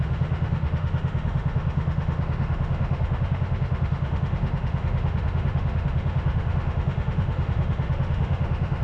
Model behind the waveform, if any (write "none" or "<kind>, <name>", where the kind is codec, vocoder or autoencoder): autoencoder, DAC-VAE